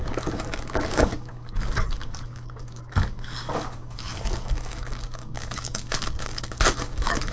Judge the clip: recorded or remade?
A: remade